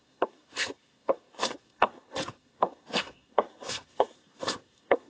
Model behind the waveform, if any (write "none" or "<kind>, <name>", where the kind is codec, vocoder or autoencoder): codec, SNAC